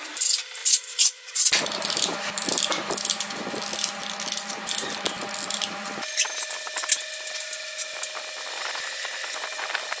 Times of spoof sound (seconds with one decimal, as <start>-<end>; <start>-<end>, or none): 0.6-1.5